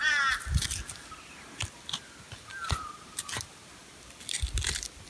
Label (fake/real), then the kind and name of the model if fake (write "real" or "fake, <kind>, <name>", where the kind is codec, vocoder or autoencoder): real